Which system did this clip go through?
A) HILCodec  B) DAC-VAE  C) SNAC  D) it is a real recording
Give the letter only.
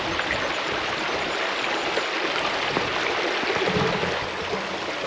D